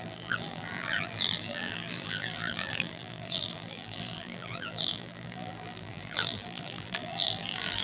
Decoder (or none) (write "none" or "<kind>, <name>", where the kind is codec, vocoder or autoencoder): vocoder, BigVGAN v2